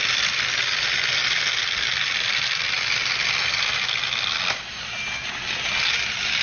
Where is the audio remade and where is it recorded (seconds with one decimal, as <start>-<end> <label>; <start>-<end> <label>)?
0.0-6.4 recorded